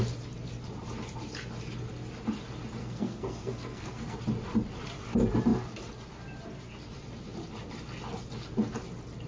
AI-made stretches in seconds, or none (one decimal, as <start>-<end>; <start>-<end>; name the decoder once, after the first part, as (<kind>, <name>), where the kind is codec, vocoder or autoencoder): 2.8-4.2 (codec, SNAC)